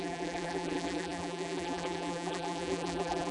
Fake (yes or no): yes